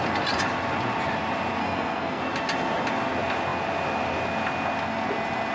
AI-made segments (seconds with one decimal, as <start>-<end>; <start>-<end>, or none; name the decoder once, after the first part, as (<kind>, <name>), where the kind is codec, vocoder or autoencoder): 1.6-2.2 (codec, SNAC)